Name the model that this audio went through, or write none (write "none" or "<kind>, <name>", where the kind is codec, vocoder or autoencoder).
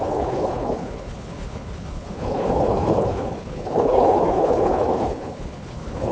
codec, HILCodec